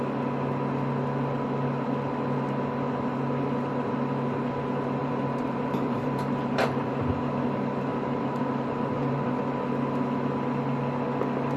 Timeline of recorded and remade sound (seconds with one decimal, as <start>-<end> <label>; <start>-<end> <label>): 0.0-5.0 recorded; 5.0-7.2 remade; 7.2-7.9 recorded; 7.9-9.4 remade; 9.4-11.6 recorded

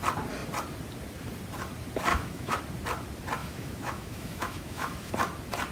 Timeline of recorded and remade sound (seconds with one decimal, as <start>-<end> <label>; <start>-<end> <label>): 0.0-2.1 recorded; 2.1-2.6 remade; 2.6-3.4 recorded; 3.4-5.1 remade; 5.1-5.7 recorded

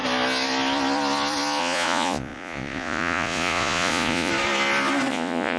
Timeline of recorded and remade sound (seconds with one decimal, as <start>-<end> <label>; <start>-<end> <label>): 0.0-1.6 recorded; 1.6-4.3 remade; 4.3-5.1 recorded; 5.1-5.6 remade